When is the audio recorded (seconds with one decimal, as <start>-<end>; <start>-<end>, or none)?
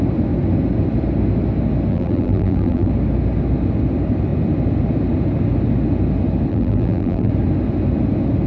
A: 0.0-1.9; 2.9-6.5; 7.3-8.5